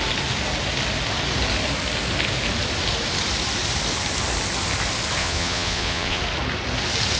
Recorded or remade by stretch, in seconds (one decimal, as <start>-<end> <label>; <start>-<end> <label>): 0.0-5.2 recorded; 5.2-6.2 remade; 6.2-7.2 recorded